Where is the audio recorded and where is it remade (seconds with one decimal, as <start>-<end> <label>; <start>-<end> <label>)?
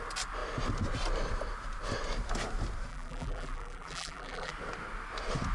0.0-2.9 recorded; 2.9-4.5 remade; 4.5-5.5 recorded